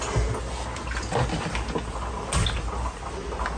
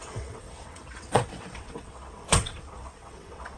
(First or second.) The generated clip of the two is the second